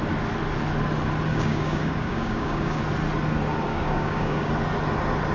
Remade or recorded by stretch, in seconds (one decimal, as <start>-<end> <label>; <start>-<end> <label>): 0.0-1.3 recorded; 1.3-2.8 remade; 2.8-3.7 recorded; 3.7-4.5 remade; 4.5-5.3 recorded